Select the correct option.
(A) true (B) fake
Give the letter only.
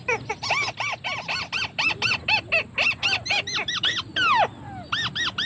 A